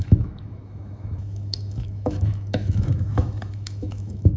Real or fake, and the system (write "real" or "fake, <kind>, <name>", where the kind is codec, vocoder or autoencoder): fake, autoencoder, DAC-VAE